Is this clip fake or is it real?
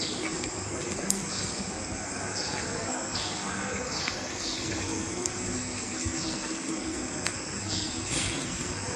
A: fake